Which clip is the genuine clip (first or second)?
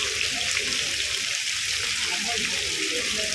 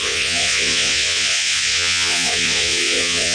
first